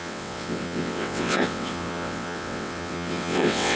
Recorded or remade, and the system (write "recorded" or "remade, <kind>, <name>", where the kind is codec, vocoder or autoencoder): remade, vocoder, WaveNeXt